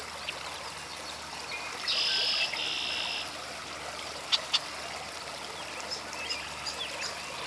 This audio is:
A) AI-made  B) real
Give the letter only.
B